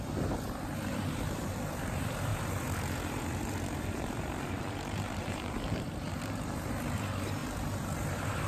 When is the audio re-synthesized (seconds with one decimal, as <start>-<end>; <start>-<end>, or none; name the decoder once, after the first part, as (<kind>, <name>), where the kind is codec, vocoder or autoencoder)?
0.0-8.5 (vocoder, BigVGAN v2)